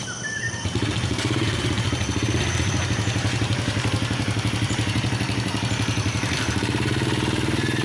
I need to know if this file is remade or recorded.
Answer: remade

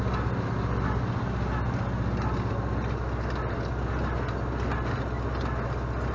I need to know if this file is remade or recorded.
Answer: recorded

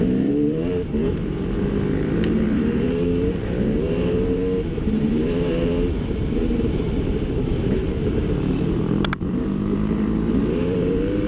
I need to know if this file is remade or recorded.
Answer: remade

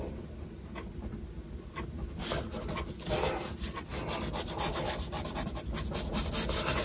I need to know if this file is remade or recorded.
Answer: recorded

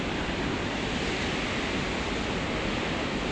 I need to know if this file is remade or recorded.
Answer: recorded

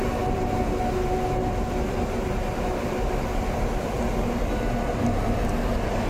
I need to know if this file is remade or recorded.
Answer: recorded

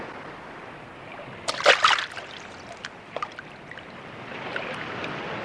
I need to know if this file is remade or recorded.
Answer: remade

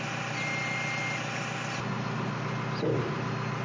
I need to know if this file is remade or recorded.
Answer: recorded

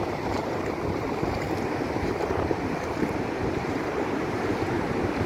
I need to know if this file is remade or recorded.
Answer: remade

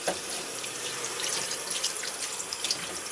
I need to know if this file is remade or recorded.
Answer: remade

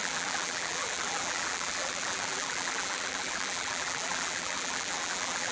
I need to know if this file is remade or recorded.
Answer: remade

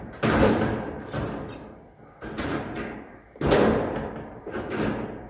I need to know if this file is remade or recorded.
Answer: remade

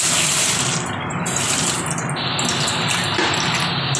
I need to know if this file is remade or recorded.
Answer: recorded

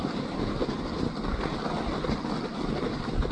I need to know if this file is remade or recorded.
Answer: recorded